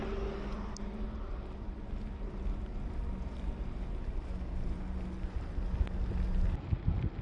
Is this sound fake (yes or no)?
no